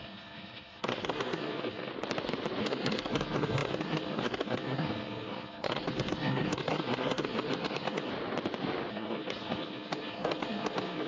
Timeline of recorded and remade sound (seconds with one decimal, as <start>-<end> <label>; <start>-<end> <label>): 0.0-1.9 remade; 1.9-2.6 recorded; 2.6-8.1 remade; 8.1-8.9 recorded; 8.9-11.1 remade